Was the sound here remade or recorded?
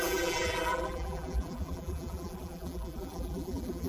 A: remade